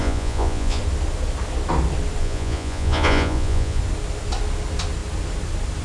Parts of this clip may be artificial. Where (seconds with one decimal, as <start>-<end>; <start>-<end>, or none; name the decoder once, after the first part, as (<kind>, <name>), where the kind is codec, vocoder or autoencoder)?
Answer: 0.0-0.8 (vocoder, Vocos); 2.2-3.8

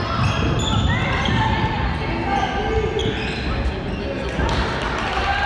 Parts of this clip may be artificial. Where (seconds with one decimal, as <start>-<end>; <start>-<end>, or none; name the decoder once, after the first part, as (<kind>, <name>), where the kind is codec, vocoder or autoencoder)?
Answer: none

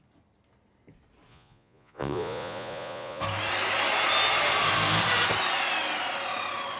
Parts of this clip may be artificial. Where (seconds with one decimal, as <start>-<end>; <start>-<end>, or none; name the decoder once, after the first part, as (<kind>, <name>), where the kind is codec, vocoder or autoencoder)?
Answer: 1.3-3.2 (vocoder, Vocos)

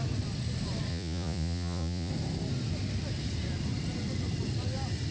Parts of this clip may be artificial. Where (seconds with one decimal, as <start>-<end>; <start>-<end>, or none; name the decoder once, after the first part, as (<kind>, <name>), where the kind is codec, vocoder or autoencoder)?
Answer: 0.9-2.1 (vocoder, Vocos)